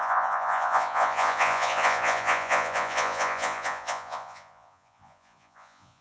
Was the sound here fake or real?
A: fake